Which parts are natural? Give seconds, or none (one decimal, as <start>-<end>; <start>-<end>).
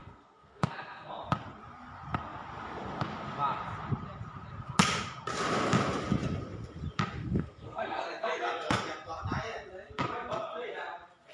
1.1-7.2; 8.5-11.3